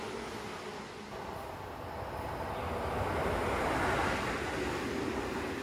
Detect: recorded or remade recorded